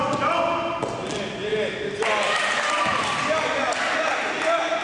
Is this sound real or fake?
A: real